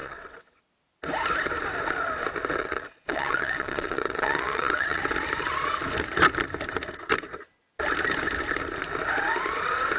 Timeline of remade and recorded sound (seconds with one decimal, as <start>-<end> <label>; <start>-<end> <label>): 0.0-0.7 remade; 0.7-2.6 recorded; 2.6-5.0 remade; 5.0-10.0 recorded